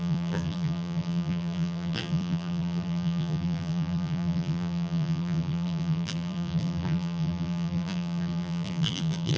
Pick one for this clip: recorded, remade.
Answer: remade